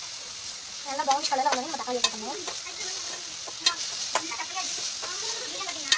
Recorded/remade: recorded